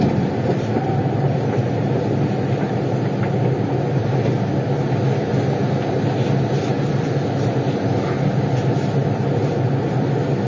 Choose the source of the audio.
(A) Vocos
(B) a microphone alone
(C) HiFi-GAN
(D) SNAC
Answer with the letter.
B